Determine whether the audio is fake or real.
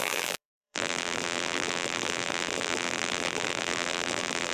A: fake